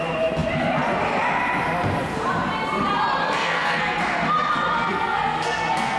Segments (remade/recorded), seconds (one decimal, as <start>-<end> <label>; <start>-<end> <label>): 0.0-3.2 recorded; 3.2-4.0 remade; 4.0-4.7 recorded; 4.7-6.0 remade